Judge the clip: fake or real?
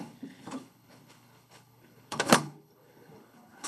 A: fake